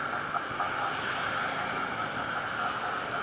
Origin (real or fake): real